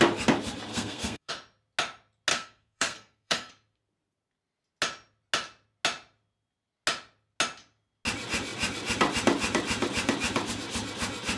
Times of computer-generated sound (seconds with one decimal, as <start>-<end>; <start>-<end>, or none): 0.7-1.3; 2.3-3.5